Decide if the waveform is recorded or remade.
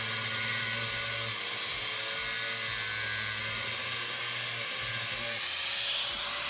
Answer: recorded